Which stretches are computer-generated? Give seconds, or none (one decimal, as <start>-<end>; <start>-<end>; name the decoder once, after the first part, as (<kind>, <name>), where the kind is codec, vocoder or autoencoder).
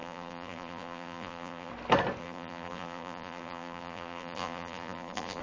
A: 0.0-1.7 (vocoder, BigVGAN v2); 2.2-5.4